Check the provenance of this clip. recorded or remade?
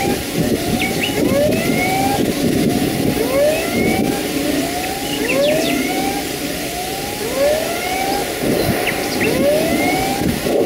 recorded